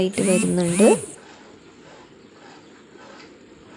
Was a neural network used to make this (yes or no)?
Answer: no